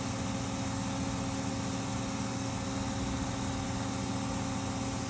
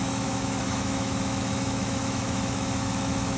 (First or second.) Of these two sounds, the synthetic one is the second